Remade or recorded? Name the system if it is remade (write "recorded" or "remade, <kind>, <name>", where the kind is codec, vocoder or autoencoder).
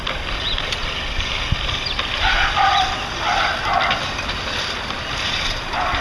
recorded